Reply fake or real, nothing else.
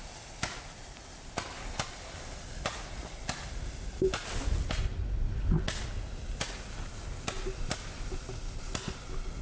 real